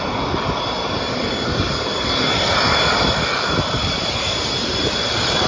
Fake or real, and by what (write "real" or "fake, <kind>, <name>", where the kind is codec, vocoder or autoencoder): fake, vocoder, BigVGAN v2